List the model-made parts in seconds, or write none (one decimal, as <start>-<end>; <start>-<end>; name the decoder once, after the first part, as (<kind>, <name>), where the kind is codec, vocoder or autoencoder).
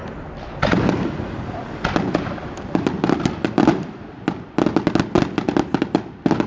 none